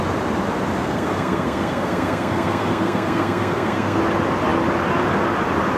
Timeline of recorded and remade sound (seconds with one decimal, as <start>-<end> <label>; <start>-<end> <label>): 0.0-0.8 recorded; 0.8-4.0 remade; 4.0-5.8 recorded